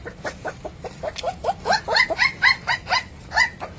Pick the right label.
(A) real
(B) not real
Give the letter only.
A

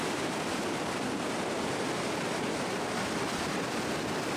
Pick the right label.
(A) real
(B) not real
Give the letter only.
A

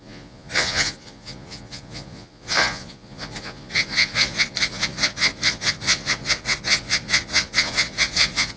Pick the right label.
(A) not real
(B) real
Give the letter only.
A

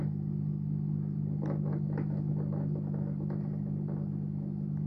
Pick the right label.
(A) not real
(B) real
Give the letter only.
B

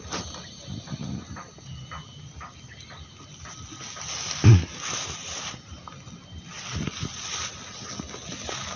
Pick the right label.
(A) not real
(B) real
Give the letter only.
B